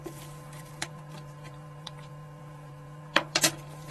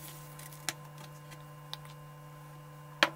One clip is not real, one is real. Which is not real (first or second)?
first